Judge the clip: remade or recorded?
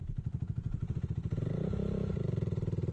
recorded